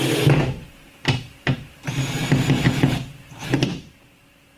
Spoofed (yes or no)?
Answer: yes